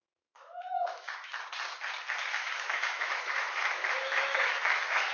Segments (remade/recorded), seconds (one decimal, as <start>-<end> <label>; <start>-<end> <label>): 0.0-1.3 remade; 1.3-2.3 recorded; 2.3-5.1 remade